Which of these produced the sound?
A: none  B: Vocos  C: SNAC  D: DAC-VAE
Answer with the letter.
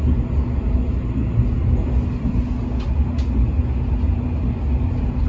A